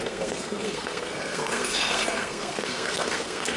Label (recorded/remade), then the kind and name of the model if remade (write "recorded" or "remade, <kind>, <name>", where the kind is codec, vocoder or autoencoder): remade, codec, SNAC